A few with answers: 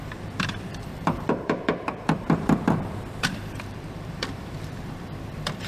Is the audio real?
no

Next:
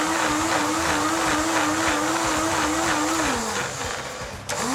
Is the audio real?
yes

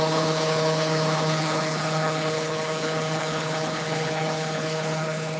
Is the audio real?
no